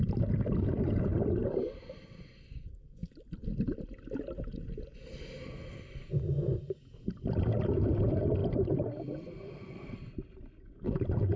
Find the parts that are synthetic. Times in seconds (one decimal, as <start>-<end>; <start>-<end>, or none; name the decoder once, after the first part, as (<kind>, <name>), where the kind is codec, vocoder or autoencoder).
8.4-10.4 (vocoder, BigVGAN v2)